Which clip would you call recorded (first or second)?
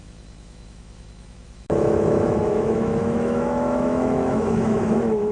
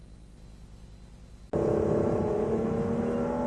second